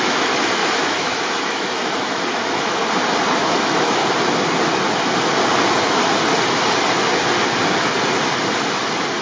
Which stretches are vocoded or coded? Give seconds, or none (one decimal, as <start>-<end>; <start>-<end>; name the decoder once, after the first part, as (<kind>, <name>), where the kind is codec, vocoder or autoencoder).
0.0-2.8 (autoencoder, DAC-VAE); 3.4-4.0